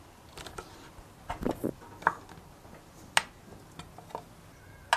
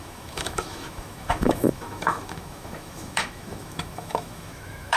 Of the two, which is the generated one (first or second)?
second